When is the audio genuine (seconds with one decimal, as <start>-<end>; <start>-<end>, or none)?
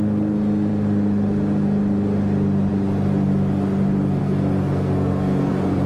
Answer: 0.0-4.2; 5.5-5.9